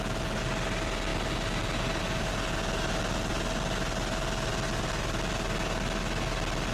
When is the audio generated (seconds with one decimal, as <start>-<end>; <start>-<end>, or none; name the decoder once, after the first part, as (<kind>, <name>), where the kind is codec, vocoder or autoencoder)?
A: none